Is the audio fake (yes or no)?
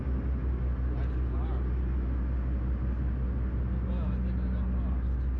no